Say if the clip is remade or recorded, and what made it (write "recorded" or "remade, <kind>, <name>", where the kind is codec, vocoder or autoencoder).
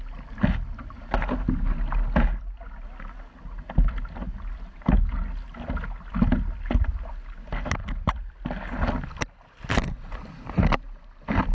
recorded